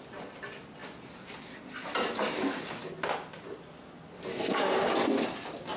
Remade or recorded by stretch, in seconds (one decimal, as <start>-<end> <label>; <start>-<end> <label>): 0.0-4.3 recorded; 4.3-4.9 remade; 4.9-5.8 recorded

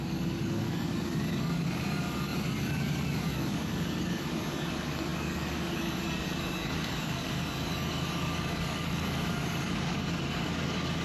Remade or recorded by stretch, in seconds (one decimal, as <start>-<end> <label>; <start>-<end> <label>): 0.0-11.0 remade

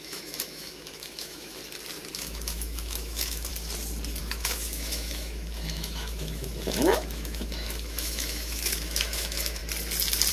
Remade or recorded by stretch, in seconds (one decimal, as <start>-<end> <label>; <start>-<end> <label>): 0.0-1.6 remade; 1.6-2.1 recorded; 2.1-3.5 remade; 3.5-4.2 recorded; 4.2-9.6 remade; 9.6-10.3 recorded

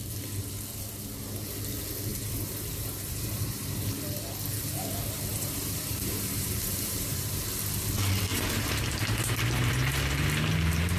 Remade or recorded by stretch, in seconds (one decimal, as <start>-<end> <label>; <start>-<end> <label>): 0.0-2.1 recorded; 2.1-3.8 remade; 3.8-5.3 recorded; 5.3-7.4 remade; 7.4-8.3 recorded; 8.3-9.7 remade; 9.7-11.0 recorded

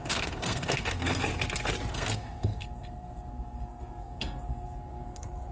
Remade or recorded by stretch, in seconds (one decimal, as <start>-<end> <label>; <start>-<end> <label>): 0.0-1.3 remade; 1.3-1.9 recorded; 1.9-5.5 remade